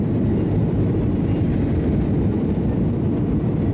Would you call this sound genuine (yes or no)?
no